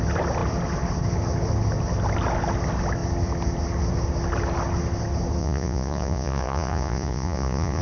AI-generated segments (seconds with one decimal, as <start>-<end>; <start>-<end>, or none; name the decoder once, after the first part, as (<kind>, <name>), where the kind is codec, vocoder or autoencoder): 5.4-7.8 (vocoder, Vocos)